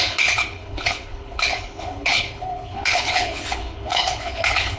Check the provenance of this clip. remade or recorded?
remade